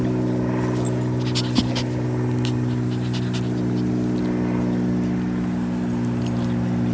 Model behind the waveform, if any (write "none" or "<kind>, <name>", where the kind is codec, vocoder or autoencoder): none